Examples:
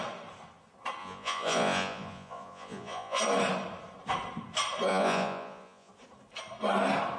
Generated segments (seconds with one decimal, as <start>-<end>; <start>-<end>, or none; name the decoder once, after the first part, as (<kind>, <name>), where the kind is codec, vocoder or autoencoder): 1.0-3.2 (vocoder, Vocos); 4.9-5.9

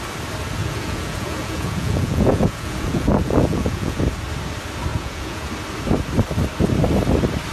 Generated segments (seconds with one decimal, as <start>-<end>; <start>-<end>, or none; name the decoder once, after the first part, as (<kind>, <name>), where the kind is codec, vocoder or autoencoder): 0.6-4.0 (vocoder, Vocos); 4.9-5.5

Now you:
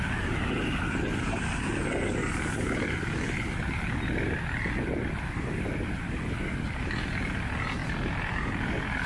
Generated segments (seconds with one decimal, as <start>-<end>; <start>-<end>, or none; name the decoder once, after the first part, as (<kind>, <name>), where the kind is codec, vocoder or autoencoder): none

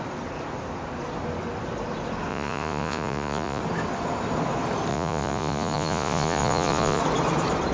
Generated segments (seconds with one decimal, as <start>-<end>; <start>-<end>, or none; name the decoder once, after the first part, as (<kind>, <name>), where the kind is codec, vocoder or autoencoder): 2.3-3.6 (vocoder, Vocos); 4.9-7.0